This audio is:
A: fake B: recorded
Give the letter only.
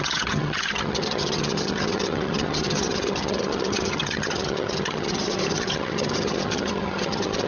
A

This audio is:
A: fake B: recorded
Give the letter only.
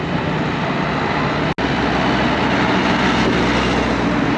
B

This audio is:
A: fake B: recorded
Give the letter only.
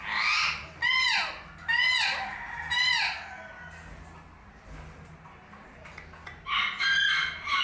B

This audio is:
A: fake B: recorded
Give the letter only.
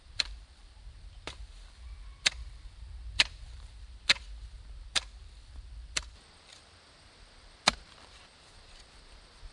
A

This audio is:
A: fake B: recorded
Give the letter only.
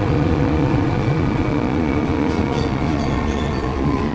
A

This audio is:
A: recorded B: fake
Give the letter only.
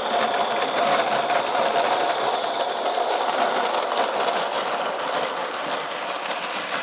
A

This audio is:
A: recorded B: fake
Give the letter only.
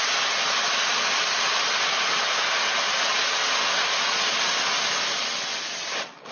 A